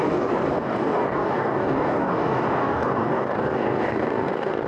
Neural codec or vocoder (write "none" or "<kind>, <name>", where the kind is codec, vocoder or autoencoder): codec, DAC